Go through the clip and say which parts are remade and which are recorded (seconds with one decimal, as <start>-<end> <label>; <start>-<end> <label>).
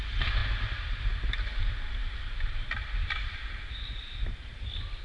0.0-0.4 recorded; 0.4-1.0 remade; 1.0-2.0 recorded; 2.0-5.0 remade